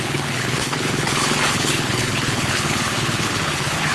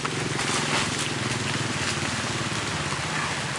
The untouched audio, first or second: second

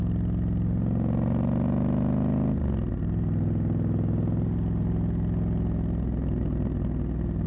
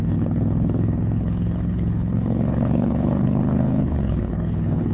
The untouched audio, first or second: first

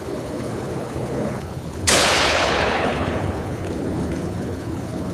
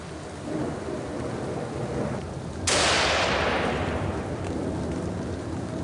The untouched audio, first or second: second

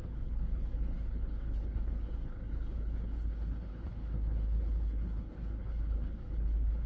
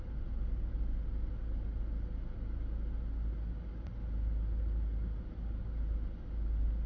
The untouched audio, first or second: second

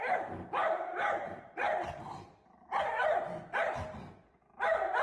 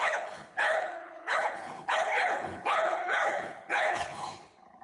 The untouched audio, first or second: first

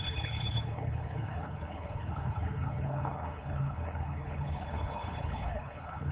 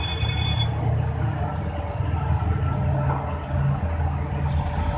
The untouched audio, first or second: second